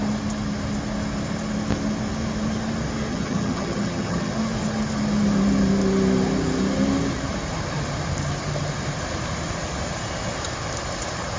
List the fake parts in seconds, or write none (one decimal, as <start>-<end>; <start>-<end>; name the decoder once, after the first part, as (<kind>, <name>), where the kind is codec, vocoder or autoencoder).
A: 3.1-4.3 (vocoder, HiFi-GAN)